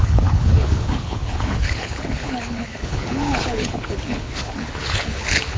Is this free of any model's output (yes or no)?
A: no